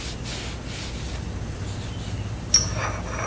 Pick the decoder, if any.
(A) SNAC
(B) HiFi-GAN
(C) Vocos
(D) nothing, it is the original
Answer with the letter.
D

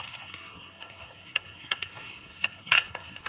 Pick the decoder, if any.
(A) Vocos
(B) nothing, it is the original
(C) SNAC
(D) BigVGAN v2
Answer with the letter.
C